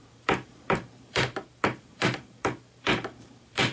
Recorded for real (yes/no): no